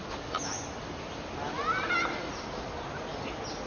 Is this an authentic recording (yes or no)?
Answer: yes